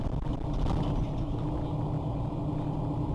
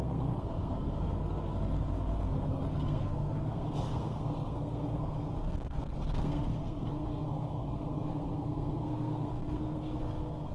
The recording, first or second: first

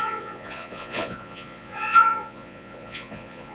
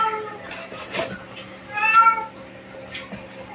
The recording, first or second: second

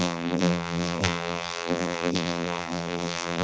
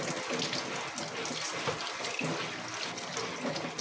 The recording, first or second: second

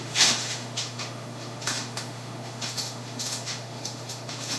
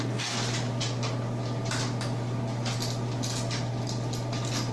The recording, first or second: second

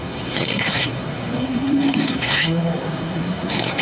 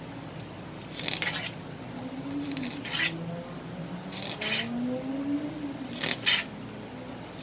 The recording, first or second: second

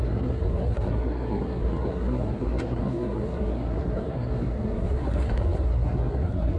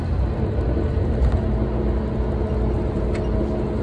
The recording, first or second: second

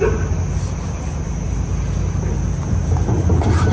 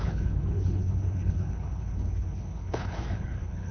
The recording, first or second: first